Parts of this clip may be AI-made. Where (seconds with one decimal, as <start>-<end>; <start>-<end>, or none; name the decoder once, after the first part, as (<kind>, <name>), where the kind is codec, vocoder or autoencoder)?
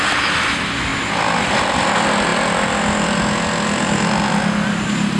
none